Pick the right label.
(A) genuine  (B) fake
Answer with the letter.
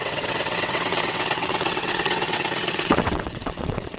B